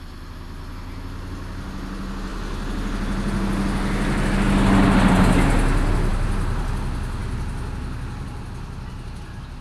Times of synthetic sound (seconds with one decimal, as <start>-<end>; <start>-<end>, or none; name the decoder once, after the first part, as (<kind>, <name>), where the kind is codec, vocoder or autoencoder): none